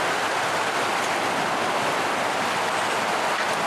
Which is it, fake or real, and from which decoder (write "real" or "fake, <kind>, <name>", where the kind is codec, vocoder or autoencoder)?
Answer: real